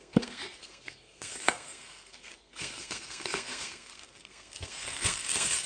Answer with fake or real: fake